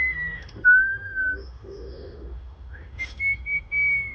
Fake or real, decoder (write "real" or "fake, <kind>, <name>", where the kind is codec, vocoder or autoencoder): fake, autoencoder, DAC-VAE